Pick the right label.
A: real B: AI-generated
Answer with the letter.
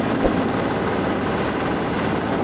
A